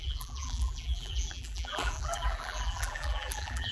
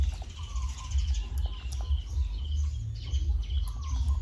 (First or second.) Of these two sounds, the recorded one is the second